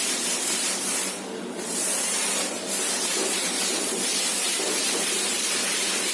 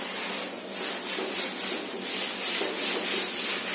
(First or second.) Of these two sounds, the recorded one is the second